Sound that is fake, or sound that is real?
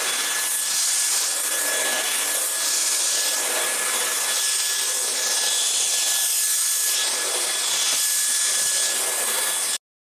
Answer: real